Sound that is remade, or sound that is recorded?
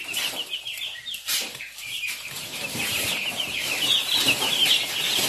remade